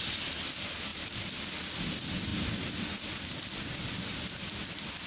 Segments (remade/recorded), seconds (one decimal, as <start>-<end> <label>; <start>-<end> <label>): 0.0-5.1 recorded